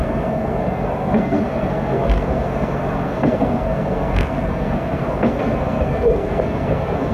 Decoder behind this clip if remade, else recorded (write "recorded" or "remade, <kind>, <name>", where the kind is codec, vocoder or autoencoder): remade, codec, SNAC